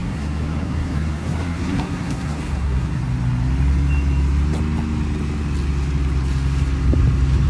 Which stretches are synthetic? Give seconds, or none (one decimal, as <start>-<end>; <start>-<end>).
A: 0.0-3.0